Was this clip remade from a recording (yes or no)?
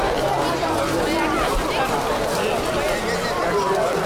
no